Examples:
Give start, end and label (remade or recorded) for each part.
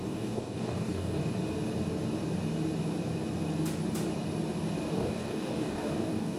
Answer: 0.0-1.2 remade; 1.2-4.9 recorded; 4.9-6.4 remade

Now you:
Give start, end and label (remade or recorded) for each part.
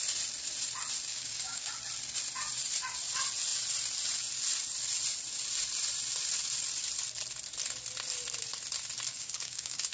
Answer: 0.0-1.1 recorded; 1.1-1.7 remade; 1.7-9.1 recorded; 9.1-9.9 remade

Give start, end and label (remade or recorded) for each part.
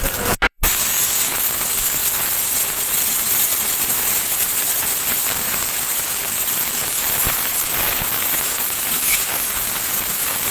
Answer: 0.0-2.0 remade; 2.0-5.3 recorded; 5.3-10.5 remade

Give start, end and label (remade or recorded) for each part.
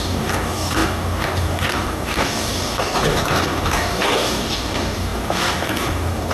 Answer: 0.0-6.3 remade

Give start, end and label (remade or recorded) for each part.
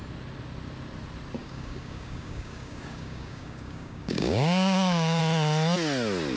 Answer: 0.0-1.4 recorded; 1.4-5.2 remade; 5.2-6.4 recorded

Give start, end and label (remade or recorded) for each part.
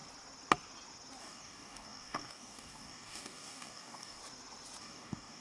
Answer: 0.0-1.2 recorded; 1.2-4.2 remade; 4.2-4.8 recorded; 4.8-5.4 remade